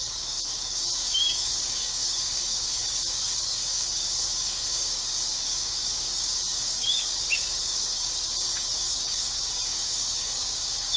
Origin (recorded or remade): remade